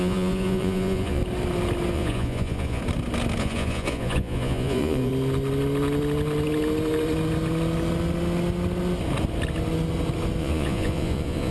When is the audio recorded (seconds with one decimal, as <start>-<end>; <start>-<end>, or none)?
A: 1.2-1.9; 2.8-3.4; 5.1-10.4